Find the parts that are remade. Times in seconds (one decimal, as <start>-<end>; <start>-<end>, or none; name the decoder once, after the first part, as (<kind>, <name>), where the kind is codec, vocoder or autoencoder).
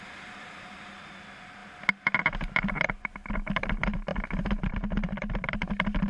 none